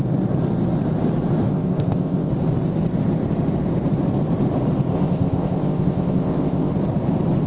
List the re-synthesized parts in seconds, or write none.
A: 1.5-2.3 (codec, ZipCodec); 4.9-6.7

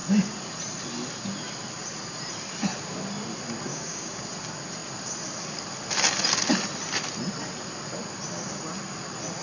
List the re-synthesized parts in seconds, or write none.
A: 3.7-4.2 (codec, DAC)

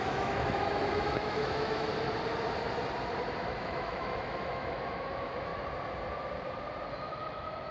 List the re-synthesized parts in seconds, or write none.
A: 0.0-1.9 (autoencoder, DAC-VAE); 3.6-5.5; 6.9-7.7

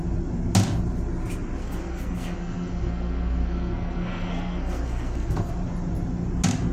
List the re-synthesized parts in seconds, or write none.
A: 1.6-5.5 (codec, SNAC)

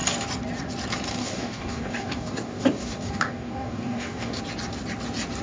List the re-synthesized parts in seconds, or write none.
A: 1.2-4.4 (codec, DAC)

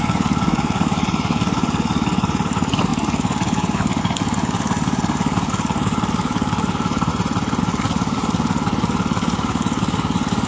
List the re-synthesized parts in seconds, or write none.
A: 0.0-7.1 (codec, DAC); 7.6-10.5

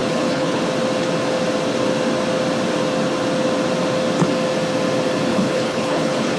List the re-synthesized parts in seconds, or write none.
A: 0.0-0.6 (codec, HILCodec); 5.3-6.4